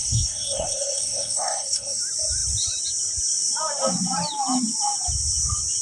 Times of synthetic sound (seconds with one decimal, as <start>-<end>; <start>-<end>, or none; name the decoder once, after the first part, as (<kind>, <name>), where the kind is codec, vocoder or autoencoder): 0.0-2.0 (codec, SNAC)